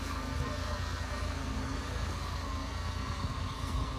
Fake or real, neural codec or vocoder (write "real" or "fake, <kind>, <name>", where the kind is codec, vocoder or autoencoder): fake, codec, SNAC